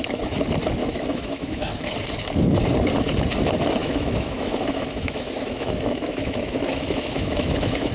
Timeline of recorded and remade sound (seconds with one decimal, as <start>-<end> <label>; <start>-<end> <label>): 0.0-0.8 recorded; 0.8-1.8 remade; 1.8-3.8 recorded; 3.8-7.9 remade